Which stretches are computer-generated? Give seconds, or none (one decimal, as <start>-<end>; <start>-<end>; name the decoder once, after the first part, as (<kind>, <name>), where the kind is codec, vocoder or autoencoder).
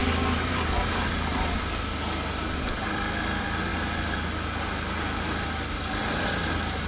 none